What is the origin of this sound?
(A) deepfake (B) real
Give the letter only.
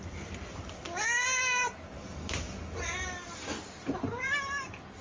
B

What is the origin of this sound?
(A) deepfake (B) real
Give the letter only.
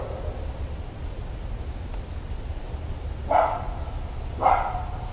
B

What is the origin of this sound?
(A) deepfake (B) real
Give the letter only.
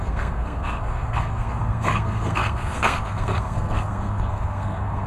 A